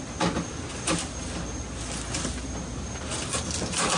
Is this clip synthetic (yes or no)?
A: no